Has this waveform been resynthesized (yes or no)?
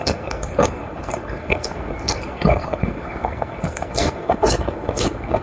yes